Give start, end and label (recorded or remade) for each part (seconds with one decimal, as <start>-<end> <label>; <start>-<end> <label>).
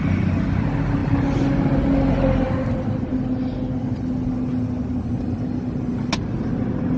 0.0-7.0 recorded